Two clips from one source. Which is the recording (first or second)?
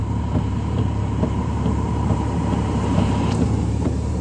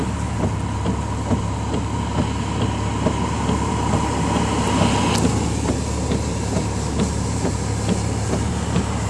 second